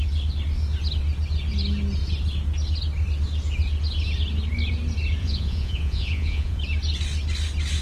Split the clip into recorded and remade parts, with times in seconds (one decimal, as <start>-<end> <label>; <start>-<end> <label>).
0.0-5.2 recorded; 5.2-6.6 remade; 6.6-7.8 recorded